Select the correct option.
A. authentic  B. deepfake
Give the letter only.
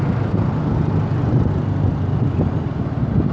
B